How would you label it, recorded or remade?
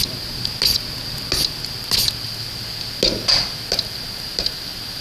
recorded